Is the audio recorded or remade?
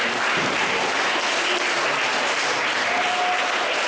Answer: recorded